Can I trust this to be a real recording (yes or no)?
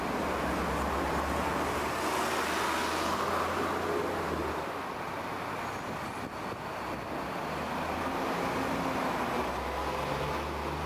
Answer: yes